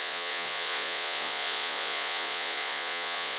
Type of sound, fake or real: fake